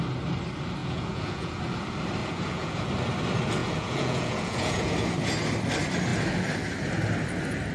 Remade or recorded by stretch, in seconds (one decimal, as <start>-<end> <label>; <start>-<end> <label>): 0.0-0.8 recorded; 0.8-1.6 remade; 1.6-2.2 recorded; 2.2-2.9 remade; 2.9-3.6 recorded; 3.6-4.9 remade; 4.9-7.7 recorded